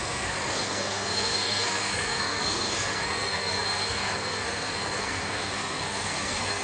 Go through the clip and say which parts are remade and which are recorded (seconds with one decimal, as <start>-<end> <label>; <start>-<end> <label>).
0.0-6.6 remade